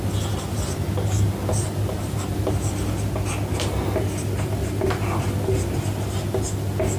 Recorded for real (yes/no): yes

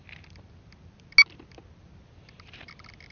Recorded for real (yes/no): yes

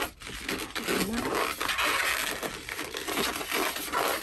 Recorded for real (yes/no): yes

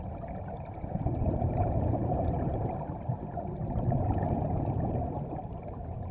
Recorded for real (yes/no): no